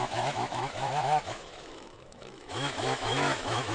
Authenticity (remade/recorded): remade